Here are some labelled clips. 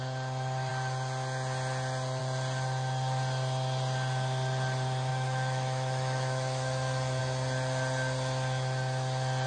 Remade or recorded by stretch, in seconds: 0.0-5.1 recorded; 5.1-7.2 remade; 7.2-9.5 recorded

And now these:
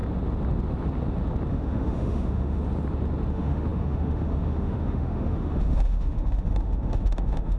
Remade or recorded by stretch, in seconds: 0.0-1.5 recorded; 1.5-2.6 remade; 2.6-3.3 recorded; 3.3-7.6 remade

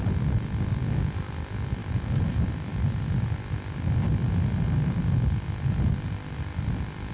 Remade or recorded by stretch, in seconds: 0.0-7.1 recorded